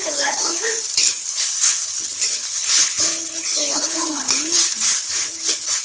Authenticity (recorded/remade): remade